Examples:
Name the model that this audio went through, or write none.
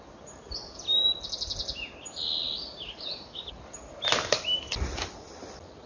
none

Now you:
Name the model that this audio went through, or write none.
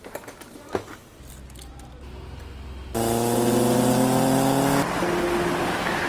none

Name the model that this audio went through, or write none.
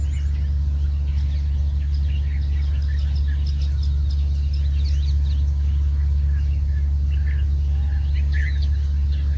none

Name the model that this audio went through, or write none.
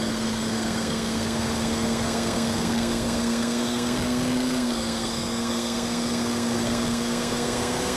codec, SNAC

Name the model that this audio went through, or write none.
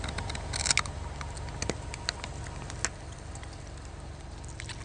none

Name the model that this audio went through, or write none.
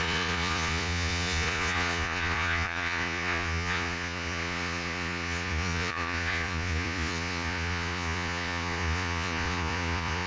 vocoder, Vocos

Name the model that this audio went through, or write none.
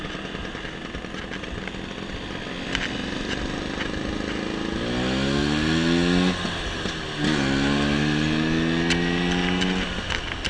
none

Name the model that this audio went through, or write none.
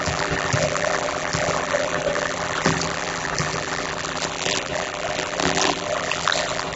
vocoder, BigVGAN v2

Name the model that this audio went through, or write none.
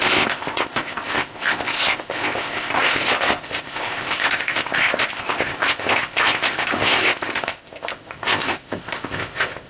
codec, ZipCodec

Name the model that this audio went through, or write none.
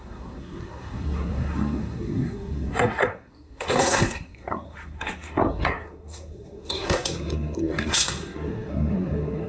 codec, SNAC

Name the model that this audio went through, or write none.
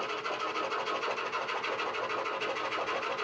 none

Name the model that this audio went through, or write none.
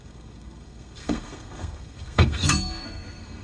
codec, SNAC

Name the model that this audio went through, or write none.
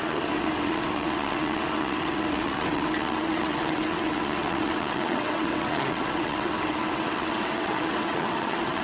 vocoder, WaveNeXt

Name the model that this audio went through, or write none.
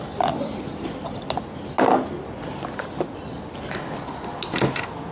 none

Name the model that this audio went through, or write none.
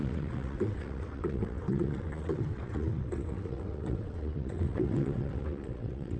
vocoder, WaveNeXt